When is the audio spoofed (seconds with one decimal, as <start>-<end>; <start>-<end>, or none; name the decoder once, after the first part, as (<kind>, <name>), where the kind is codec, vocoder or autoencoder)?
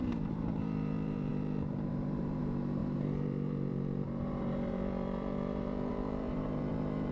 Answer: 0.0-7.1 (vocoder, BigVGAN v2)